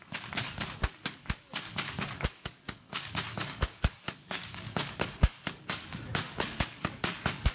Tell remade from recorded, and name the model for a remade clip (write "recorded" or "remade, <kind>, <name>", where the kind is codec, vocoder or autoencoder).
remade, codec, DAC